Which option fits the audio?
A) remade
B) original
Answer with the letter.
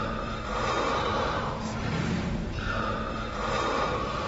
A